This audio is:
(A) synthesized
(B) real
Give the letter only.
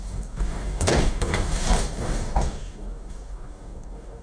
A